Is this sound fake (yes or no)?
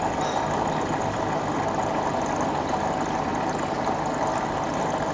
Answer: no